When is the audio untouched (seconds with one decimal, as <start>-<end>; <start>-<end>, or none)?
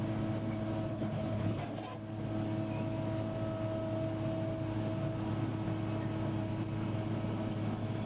0.0-0.9; 1.6-8.1